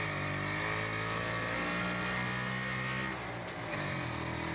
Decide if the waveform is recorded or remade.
recorded